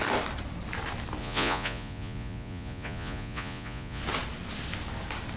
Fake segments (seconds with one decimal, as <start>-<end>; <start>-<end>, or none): 1.2-4.0